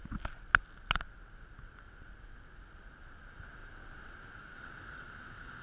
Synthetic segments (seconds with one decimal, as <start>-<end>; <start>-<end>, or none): 2.4-3.6; 4.3-5.6